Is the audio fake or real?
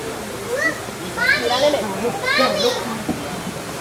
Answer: fake